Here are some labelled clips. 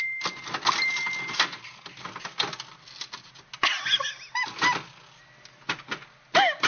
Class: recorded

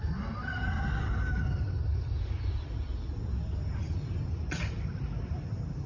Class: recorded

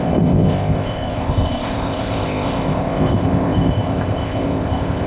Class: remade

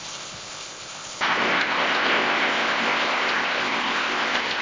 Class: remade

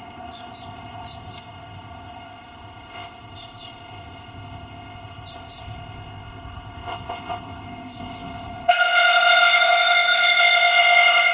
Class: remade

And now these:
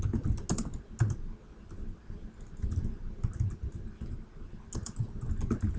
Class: recorded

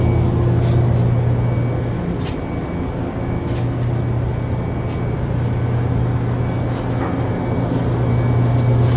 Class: recorded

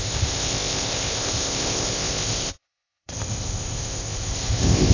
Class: remade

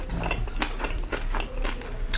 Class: recorded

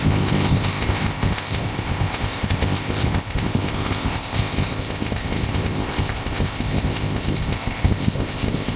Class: remade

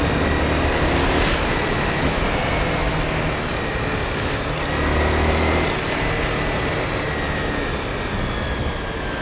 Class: recorded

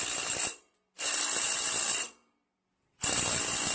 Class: recorded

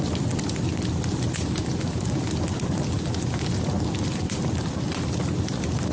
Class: recorded